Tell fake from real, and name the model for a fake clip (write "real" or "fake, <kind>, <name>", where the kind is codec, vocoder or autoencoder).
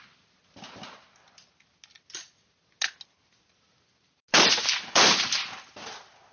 real